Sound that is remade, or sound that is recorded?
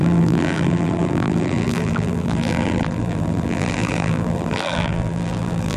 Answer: remade